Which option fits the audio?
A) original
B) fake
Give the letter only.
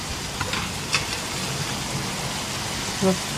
A